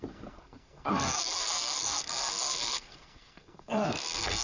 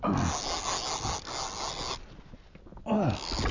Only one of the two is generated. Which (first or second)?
first